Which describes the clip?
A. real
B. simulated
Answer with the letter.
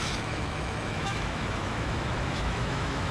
B